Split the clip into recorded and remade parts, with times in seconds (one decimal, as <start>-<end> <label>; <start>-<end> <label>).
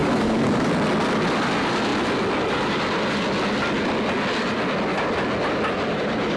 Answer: 0.0-0.7 remade; 0.7-6.4 recorded